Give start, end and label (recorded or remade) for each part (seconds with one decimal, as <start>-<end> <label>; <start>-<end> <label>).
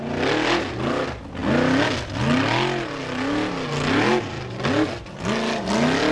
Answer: 0.0-6.1 recorded